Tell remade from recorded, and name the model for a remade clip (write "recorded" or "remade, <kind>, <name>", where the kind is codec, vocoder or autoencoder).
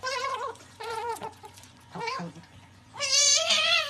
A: remade, vocoder, Vocos